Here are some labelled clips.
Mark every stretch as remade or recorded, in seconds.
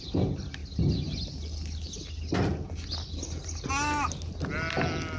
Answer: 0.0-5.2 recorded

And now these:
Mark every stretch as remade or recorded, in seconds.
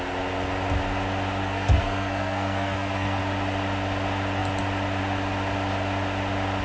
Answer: 0.0-1.4 recorded; 1.4-3.2 remade; 3.2-6.6 recorded